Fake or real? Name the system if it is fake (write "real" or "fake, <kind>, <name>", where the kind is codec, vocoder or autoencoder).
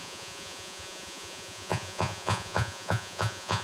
fake, vocoder, Vocos